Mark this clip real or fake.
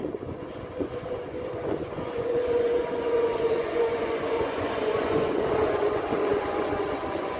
fake